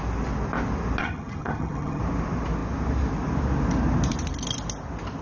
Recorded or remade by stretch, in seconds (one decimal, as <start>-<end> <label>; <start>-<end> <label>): 0.0-1.0 recorded; 1.0-2.0 remade; 2.0-5.2 recorded